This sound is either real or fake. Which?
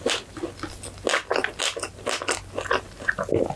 real